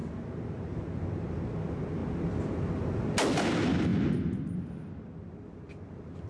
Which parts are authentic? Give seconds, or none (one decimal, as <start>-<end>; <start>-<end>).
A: 0.0-6.3